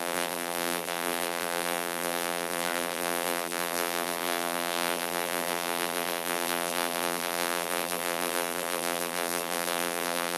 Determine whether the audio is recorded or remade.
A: remade